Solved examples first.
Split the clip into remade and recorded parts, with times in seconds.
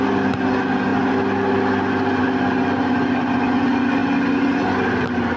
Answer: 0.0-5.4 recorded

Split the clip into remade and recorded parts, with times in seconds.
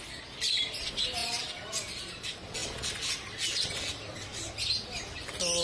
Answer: 0.0-5.6 recorded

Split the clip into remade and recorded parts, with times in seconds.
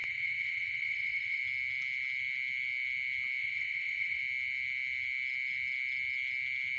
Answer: 0.0-1.4 remade; 1.4-3.4 recorded; 3.4-4.2 remade; 4.2-6.8 recorded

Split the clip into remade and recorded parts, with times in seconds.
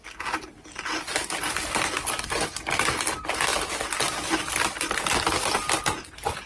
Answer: 0.0-6.5 recorded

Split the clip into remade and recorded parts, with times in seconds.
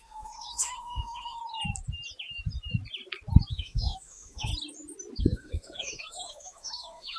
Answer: 0.0-1.4 remade; 1.4-3.5 recorded; 3.5-4.5 remade; 4.5-5.2 recorded; 5.2-7.2 remade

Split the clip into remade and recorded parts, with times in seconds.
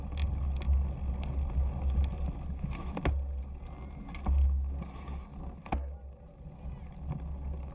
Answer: 0.0-7.7 recorded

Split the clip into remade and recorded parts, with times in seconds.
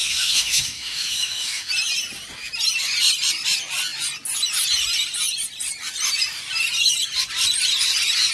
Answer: 0.0-1.7 remade; 1.7-8.3 recorded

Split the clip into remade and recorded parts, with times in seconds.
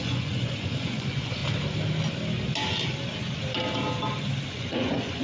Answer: 0.0-1.4 remade; 1.4-4.5 recorded; 4.5-5.2 remade